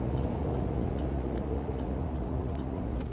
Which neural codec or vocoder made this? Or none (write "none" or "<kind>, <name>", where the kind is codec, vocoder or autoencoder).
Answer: vocoder, Vocos